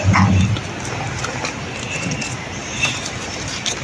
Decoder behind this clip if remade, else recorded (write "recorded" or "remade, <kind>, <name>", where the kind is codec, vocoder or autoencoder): recorded